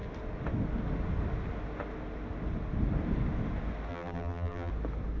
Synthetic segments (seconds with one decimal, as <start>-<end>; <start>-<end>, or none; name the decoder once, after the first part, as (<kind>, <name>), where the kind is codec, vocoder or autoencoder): 3.9-4.7 (vocoder, BigVGAN v2)